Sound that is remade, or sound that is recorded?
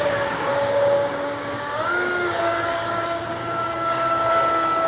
remade